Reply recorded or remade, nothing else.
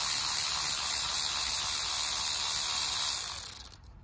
recorded